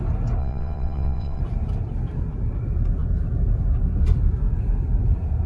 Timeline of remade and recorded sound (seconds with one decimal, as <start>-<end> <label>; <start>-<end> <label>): 0.0-0.4 recorded; 0.4-1.4 remade; 1.4-5.5 recorded